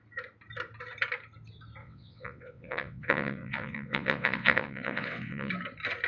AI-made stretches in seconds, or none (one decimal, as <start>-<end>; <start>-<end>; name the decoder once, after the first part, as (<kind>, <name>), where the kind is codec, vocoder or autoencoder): 1.8-5.5 (vocoder, WaveNeXt)